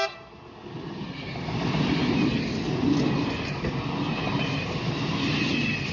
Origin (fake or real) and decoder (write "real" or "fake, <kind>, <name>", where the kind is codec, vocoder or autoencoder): real